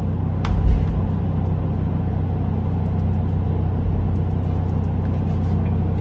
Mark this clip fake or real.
real